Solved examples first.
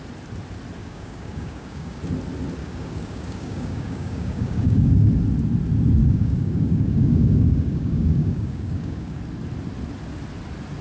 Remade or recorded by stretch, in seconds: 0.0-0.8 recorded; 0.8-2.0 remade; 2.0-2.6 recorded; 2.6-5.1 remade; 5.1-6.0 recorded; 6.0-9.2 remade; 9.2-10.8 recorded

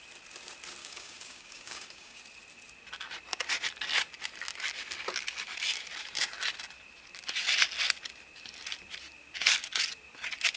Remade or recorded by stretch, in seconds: 0.0-0.8 recorded; 0.8-2.2 remade; 2.2-10.6 recorded

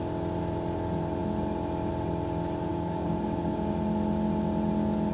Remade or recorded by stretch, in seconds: 0.0-2.7 recorded; 2.7-3.7 remade; 3.7-5.1 recorded

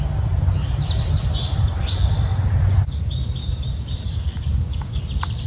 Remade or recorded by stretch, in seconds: 0.0-3.4 recorded; 3.4-5.0 remade; 5.0-5.5 recorded

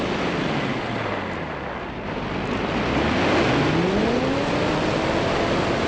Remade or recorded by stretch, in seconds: 0.0-5.9 recorded